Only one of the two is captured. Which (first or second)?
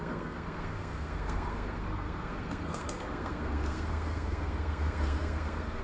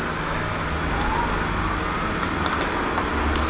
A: second